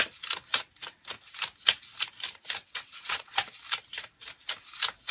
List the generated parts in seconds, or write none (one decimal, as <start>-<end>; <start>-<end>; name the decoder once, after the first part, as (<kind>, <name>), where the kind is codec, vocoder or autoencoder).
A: 2.6-3.2 (vocoder, WaveNeXt)